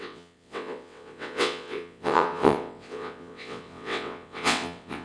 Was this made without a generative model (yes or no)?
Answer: no